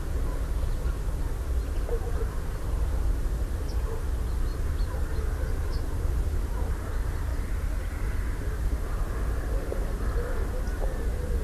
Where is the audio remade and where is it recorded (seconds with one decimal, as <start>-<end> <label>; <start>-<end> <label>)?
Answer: 0.0-11.4 recorded